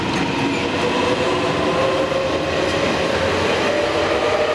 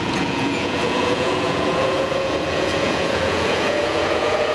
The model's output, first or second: second